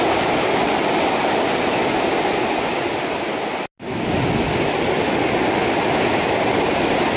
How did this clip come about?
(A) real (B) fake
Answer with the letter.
A